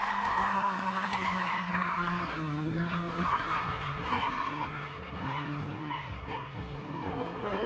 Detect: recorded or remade remade